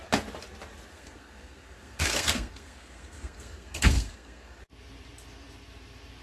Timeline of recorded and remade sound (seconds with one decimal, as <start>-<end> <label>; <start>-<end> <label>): 0.0-0.9 recorded; 0.9-4.6 remade; 4.6-6.2 recorded